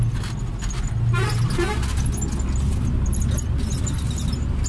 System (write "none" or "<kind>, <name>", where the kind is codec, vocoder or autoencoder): none